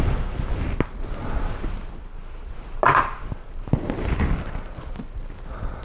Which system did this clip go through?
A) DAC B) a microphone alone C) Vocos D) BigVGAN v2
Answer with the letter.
B